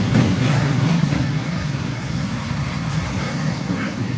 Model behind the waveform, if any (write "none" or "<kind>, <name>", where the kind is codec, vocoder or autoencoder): codec, SNAC